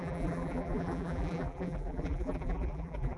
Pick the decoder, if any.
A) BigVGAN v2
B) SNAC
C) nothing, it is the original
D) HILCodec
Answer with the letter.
A